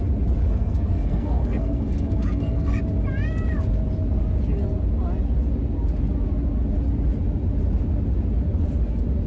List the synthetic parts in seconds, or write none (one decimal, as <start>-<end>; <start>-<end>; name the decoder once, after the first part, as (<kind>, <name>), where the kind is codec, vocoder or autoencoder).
0.4-2.8 (codec, SNAC)